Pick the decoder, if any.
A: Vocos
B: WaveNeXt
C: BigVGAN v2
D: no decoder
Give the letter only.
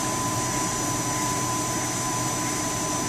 C